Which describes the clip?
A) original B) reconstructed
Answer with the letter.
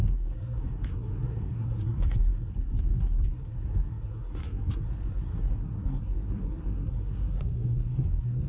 B